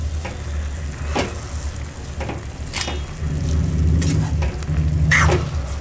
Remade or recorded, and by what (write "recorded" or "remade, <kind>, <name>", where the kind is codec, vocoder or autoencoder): recorded